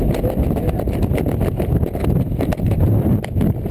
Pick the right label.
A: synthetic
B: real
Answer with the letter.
B